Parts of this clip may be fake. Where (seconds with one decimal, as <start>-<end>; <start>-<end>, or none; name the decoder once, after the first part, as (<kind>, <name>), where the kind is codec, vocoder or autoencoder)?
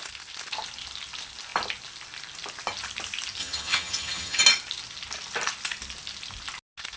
3.4-4.4 (vocoder, HiFi-GAN)